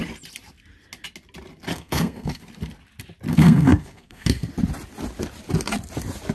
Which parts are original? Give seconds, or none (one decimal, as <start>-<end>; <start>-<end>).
0.0-1.7; 2.4-3.3; 4.5-6.3